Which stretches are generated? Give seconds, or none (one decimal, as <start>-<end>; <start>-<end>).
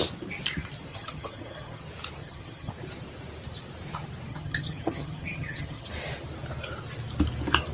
0.9-1.8; 2.2-2.7; 4.3-5.9